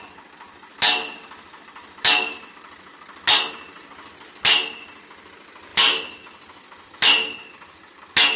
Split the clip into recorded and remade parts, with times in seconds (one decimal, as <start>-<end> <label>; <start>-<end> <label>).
0.0-0.7 recorded; 0.7-2.5 remade; 2.5-5.7 recorded; 5.7-8.0 remade; 8.0-8.4 recorded